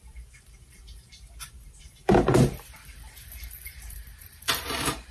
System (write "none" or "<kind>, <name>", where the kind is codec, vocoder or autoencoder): vocoder, BigVGAN v2